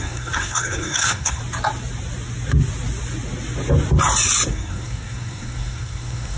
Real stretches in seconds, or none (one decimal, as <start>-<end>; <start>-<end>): 1.4-4.5